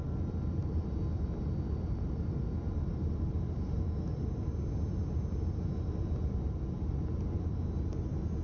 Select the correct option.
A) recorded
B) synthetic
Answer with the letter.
A